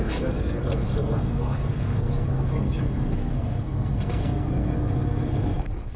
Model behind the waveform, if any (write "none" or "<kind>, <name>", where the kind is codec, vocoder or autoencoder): codec, SNAC